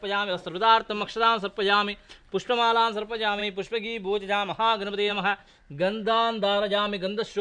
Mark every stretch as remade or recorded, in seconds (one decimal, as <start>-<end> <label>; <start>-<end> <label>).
0.0-7.4 recorded